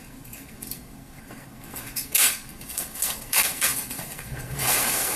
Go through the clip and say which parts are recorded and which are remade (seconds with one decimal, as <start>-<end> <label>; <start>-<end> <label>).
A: 0.0-5.2 remade